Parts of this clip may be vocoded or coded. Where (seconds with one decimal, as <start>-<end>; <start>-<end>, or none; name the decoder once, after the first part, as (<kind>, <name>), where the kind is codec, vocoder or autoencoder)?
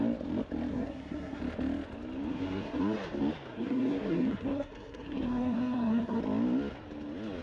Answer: 0.7-1.4 (codec, SNAC); 2.3-2.8; 3.5-6.2